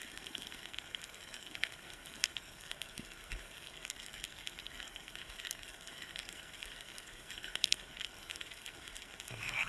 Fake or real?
fake